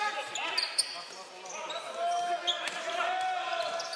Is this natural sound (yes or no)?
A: yes